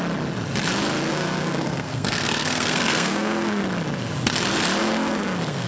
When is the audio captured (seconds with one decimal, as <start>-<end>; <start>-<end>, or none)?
0.0-1.1; 3.6-4.8

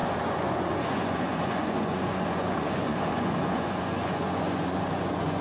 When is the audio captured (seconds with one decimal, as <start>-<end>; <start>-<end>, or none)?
none